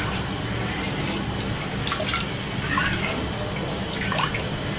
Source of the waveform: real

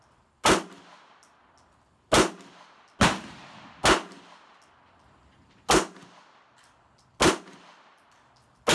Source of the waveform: real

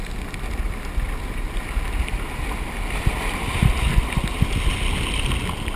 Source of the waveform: real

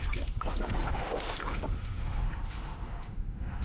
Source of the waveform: fake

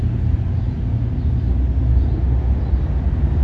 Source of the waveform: real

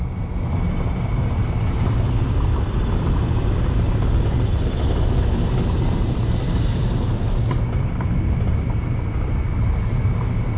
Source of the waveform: real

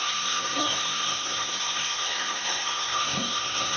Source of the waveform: fake